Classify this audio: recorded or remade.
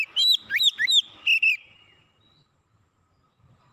recorded